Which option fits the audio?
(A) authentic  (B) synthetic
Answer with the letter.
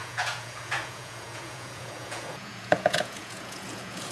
B